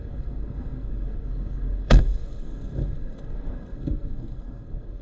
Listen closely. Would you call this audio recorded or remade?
remade